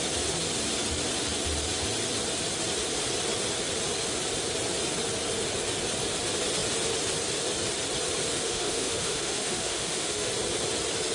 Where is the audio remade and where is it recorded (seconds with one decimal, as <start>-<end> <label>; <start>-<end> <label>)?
0.0-8.3 recorded; 8.3-10.3 remade; 10.3-11.1 recorded